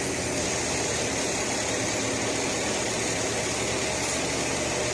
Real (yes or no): yes